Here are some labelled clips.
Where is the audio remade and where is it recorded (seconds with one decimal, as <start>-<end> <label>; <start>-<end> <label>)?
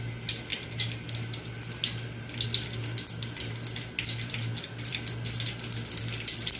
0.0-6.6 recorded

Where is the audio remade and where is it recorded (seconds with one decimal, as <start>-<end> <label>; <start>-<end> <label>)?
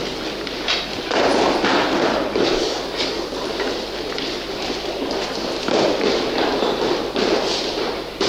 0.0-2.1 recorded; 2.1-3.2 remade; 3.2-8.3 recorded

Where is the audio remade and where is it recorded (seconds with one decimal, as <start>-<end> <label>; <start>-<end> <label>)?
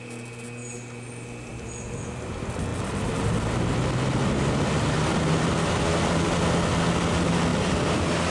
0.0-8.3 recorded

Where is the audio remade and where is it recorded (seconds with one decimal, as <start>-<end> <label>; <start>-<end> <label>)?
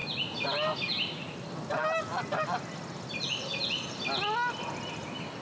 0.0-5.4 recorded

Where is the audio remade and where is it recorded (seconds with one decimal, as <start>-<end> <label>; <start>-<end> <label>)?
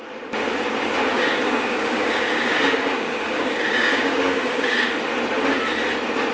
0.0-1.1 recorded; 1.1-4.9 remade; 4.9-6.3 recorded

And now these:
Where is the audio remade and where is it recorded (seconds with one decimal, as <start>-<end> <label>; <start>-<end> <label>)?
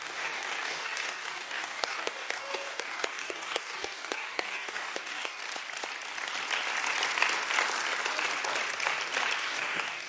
0.0-5.4 remade; 5.4-9.4 recorded; 9.4-10.1 remade